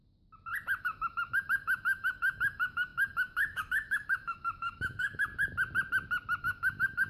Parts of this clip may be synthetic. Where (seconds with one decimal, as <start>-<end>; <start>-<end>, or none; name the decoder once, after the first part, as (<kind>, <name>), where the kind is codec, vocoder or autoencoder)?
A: 0.8-5.3 (autoencoder, DAC-VAE); 6.4-7.1